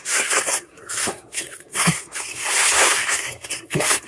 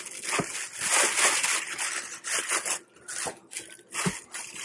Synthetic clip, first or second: first